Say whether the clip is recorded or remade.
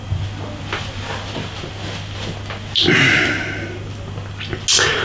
recorded